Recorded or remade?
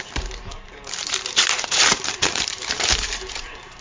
remade